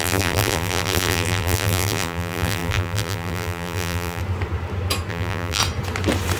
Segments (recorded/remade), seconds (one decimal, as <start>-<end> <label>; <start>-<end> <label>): 0.0-4.2 remade; 4.2-5.1 recorded; 5.1-5.6 remade; 5.6-6.4 recorded

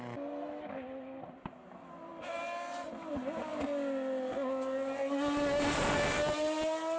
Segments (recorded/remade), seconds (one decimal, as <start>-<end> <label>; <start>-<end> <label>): 0.0-7.0 recorded

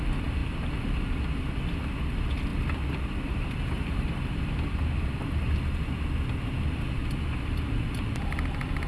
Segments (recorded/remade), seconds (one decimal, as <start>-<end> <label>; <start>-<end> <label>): 0.0-8.9 recorded

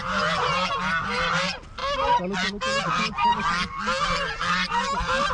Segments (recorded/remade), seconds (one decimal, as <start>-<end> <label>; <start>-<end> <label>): 0.0-5.3 recorded

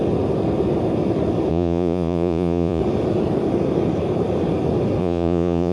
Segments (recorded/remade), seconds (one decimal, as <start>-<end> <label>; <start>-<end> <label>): 0.0-1.5 recorded; 1.5-2.8 remade; 2.8-5.0 recorded; 5.0-5.7 remade